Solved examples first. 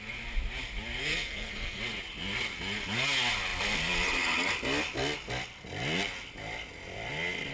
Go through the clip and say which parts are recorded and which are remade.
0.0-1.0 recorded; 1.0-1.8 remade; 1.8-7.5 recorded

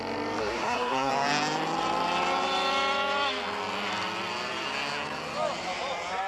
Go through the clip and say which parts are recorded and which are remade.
0.0-0.4 recorded; 0.4-1.1 remade; 1.1-6.3 recorded

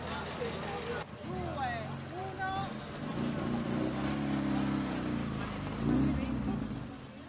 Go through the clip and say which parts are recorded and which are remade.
0.0-7.3 recorded

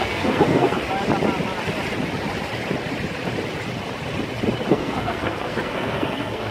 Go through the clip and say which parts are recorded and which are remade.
0.0-0.8 remade; 0.8-4.7 recorded; 4.7-6.5 remade

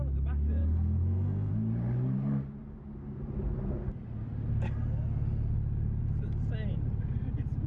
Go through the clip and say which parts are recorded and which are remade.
0.0-0.6 recorded; 0.6-1.5 remade; 1.5-7.7 recorded

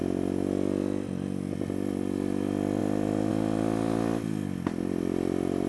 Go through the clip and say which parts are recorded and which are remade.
0.0-5.7 recorded